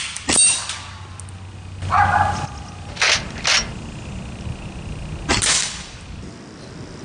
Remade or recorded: recorded